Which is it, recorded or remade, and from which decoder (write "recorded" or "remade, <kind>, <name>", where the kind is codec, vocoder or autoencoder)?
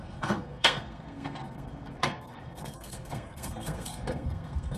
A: remade, codec, SNAC